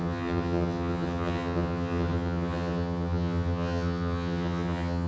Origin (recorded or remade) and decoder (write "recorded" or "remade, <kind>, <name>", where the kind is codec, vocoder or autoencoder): remade, vocoder, HiFi-GAN